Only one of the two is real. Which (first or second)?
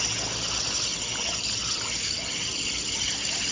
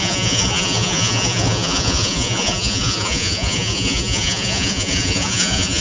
first